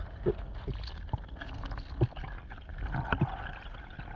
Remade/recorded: recorded